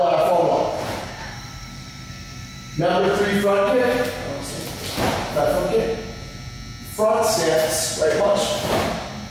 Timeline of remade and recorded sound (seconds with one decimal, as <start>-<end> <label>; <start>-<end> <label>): 0.0-1.2 recorded; 1.2-2.8 remade; 2.8-9.3 recorded